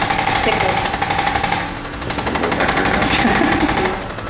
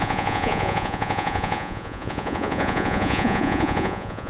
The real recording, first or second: first